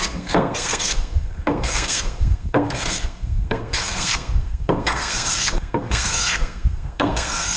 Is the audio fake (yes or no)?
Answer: yes